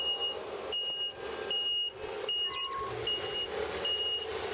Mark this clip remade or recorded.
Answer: recorded